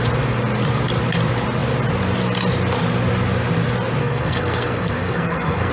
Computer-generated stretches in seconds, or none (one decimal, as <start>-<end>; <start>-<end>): 4.0-5.7